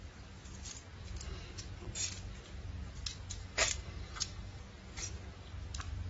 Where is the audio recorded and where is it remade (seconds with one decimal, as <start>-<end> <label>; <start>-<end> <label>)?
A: 0.0-3.4 recorded; 3.4-4.6 remade; 4.6-6.1 recorded